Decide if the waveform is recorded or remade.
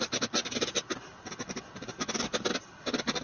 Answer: recorded